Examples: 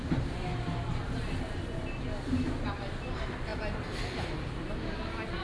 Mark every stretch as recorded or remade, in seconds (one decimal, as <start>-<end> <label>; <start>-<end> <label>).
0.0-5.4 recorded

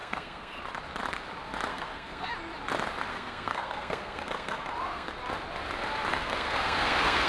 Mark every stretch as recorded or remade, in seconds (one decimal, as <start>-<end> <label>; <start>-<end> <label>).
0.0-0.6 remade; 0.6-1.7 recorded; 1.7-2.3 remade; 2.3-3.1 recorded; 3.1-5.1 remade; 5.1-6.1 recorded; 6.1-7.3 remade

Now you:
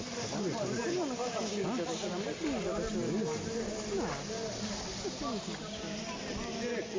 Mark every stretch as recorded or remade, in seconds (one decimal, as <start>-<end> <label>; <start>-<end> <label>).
0.0-7.0 recorded